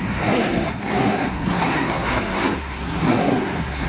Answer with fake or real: fake